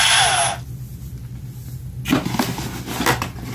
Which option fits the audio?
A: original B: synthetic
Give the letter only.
A